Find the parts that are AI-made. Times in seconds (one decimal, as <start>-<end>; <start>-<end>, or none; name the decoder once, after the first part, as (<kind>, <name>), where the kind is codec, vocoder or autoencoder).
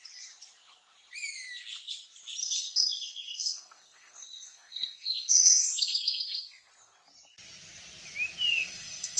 2.4-6.7 (codec, SNAC); 8.5-9.2